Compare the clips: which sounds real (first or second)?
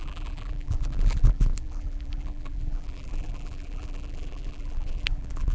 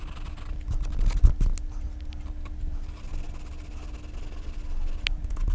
second